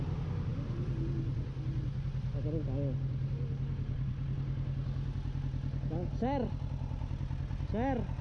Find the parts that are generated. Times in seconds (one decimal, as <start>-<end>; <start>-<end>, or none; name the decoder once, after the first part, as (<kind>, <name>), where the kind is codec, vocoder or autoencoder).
none